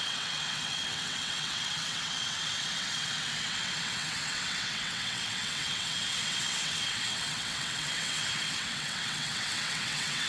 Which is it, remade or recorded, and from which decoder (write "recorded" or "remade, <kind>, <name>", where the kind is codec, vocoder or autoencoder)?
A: remade, vocoder, WaveNeXt